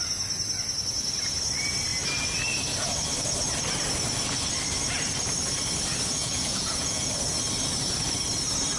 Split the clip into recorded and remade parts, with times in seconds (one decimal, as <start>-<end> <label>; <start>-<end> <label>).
0.0-6.2 recorded; 6.2-7.1 remade; 7.1-8.8 recorded